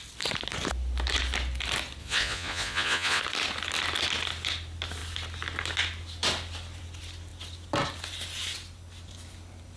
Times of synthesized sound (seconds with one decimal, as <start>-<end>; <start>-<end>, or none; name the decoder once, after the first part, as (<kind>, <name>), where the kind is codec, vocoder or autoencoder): 2.0-3.2 (vocoder, Vocos)